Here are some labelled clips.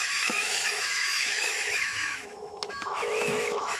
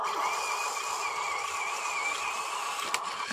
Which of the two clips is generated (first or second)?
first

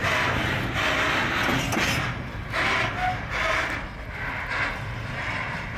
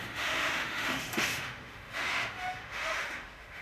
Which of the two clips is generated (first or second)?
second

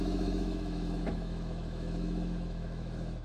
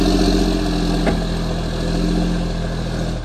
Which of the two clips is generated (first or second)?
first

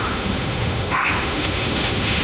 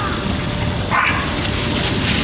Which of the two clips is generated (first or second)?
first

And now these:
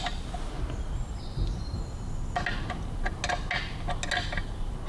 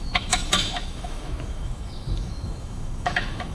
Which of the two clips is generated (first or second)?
second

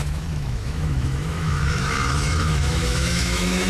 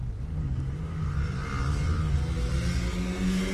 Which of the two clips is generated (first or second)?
first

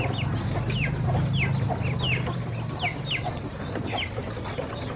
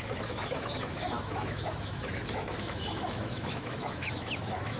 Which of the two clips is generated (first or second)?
second